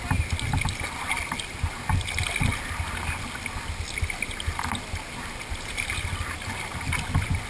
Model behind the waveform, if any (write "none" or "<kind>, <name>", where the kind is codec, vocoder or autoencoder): none